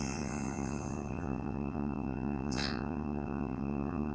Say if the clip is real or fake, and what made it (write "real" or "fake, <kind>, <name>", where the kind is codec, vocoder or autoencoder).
fake, vocoder, WaveNeXt